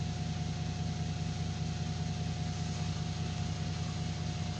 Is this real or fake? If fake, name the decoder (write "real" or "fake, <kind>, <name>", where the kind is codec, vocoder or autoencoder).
real